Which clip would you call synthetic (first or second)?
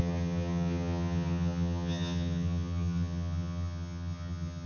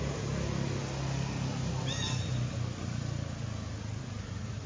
first